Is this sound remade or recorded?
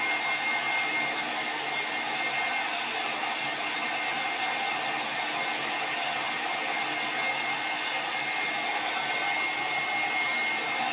recorded